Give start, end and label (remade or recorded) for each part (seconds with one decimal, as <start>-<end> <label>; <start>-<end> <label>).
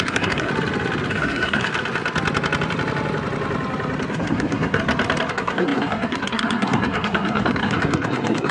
0.0-0.5 remade; 0.5-1.1 recorded; 1.1-1.7 remade; 1.7-4.1 recorded; 4.1-4.8 remade; 4.8-5.3 recorded; 5.3-8.5 remade